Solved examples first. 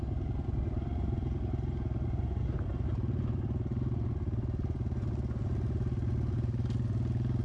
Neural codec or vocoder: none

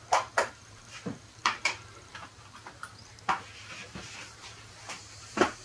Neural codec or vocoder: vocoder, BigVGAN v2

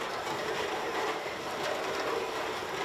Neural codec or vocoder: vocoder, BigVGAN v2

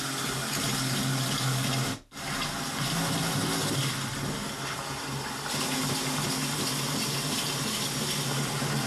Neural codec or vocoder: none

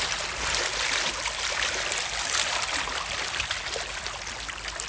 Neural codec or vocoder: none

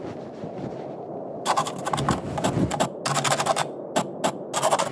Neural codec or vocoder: none